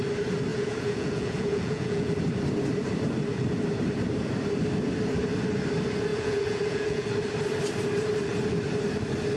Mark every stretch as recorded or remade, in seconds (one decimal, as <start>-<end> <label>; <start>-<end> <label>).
0.0-0.5 recorded; 0.5-2.2 remade; 2.2-6.1 recorded; 6.1-7.1 remade; 7.1-9.4 recorded